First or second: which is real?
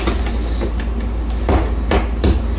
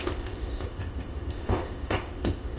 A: first